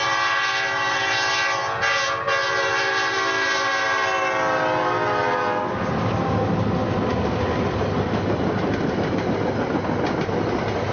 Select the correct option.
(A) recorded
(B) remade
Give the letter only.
A